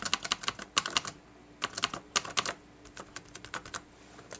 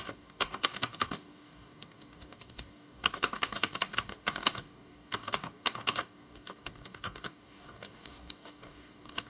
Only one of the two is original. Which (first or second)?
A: first